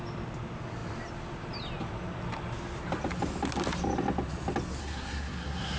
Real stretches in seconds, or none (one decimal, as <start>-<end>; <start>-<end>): 0.0-4.8